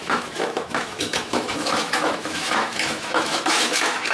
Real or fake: fake